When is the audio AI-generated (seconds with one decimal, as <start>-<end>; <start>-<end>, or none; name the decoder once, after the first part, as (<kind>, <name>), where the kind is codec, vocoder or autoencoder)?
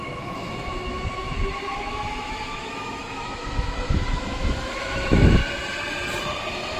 0.0-5.4 (autoencoder, DAC-VAE)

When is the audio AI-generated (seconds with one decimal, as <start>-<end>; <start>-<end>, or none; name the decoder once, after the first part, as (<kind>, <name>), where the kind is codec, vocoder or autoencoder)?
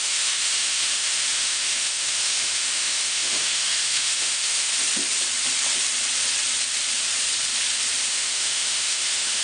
0.0-4.7 (autoencoder, DAC-VAE); 8.1-9.4